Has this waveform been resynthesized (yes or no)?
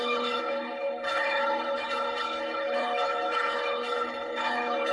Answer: yes